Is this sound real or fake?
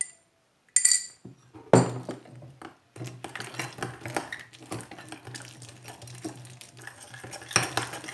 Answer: real